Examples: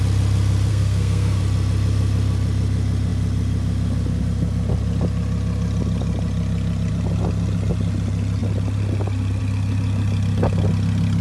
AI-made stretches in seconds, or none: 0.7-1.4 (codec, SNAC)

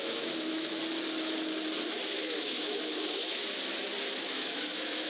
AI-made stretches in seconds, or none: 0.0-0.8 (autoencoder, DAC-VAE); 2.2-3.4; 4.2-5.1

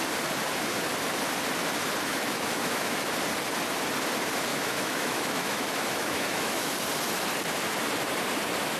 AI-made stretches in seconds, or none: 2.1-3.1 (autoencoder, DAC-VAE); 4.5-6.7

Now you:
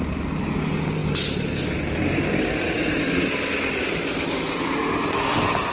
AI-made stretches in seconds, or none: none

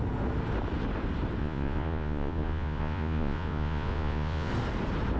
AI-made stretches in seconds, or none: 1.4-4.5 (vocoder, Vocos)

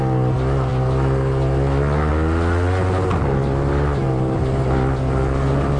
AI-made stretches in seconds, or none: none

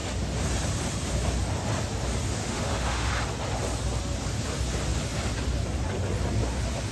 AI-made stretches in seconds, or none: 2.4-3.1 (autoencoder, DAC-VAE)

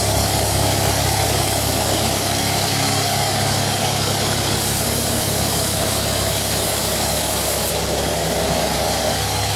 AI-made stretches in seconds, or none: 0.0-9.6 (codec, DAC)